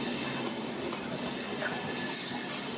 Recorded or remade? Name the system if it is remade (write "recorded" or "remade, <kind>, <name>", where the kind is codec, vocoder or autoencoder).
recorded